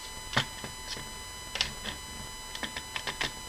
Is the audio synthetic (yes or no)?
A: no